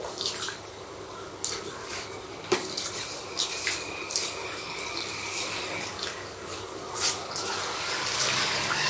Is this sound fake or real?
fake